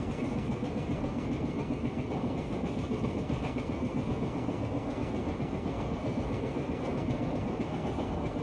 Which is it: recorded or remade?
remade